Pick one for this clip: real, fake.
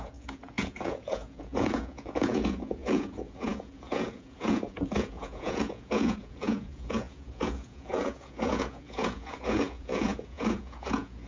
fake